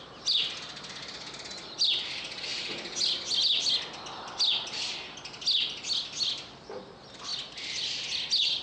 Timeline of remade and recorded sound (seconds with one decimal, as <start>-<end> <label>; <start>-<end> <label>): 0.0-8.6 recorded